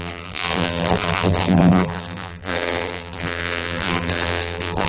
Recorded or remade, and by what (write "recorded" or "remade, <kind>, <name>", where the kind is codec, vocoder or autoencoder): remade, vocoder, BigVGAN v2